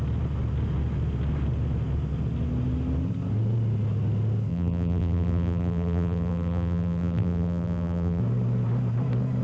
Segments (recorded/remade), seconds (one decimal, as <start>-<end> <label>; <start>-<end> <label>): 0.0-4.5 recorded; 4.5-8.2 remade; 8.2-9.4 recorded